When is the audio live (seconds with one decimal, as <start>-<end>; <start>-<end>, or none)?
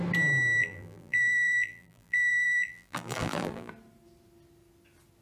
0.0-0.6; 3.7-5.2